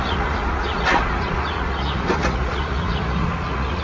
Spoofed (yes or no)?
yes